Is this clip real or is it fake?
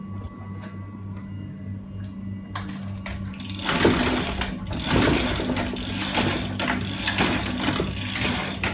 real